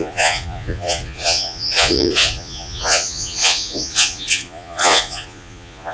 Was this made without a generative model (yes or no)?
no